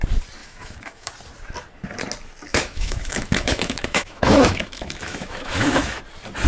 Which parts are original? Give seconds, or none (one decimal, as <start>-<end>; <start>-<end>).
0.0-0.4; 1.1-2.5; 6.0-6.5